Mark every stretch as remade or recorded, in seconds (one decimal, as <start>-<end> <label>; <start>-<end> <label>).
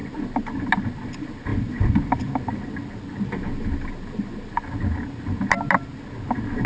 0.0-6.7 recorded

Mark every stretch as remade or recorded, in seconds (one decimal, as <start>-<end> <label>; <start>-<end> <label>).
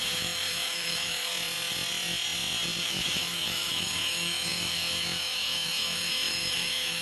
0.0-1.3 remade; 1.3-2.8 recorded; 2.8-7.0 remade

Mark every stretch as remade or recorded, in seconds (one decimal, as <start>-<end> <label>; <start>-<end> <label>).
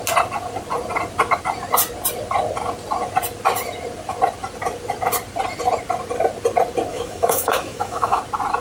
0.0-6.9 recorded; 6.9-8.2 remade; 8.2-8.6 recorded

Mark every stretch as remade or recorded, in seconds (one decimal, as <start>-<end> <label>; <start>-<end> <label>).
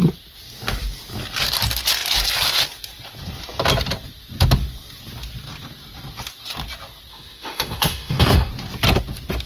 0.0-7.1 recorded; 7.1-8.5 remade; 8.5-9.5 recorded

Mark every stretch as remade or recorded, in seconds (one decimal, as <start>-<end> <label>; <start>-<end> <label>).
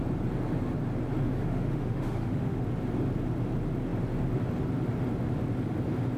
0.0-1.2 recorded; 1.2-2.6 remade; 2.6-6.2 recorded